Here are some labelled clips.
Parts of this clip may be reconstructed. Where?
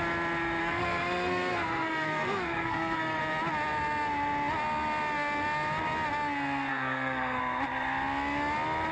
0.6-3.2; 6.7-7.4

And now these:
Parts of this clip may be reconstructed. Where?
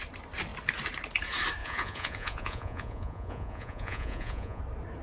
1.6-4.6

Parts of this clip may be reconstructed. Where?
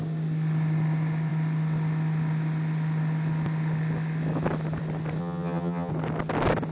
5.2-5.9